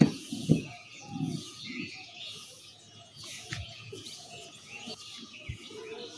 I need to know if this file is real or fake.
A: fake